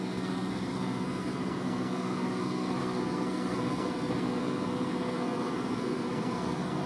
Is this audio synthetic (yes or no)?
yes